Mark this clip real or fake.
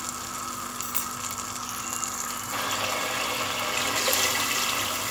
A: real